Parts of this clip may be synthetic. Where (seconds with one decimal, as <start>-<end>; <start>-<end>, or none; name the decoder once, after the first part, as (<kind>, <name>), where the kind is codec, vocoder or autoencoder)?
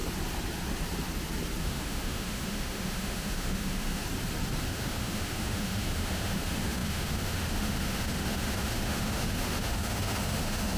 1.6-4.0 (autoencoder, DAC-VAE); 4.6-10.8